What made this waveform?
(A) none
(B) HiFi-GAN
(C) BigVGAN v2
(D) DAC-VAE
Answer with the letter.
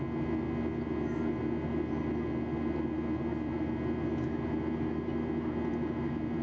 C